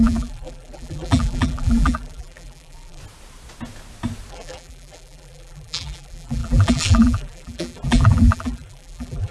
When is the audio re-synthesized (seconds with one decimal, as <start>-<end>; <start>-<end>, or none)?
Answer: 0.0-3.0; 4.3-9.3